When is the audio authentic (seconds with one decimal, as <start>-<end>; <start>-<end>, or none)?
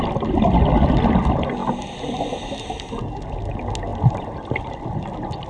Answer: 0.0-3.9; 4.9-5.5